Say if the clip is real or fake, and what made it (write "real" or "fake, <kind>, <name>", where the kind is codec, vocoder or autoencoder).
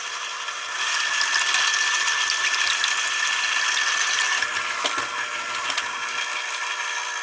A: real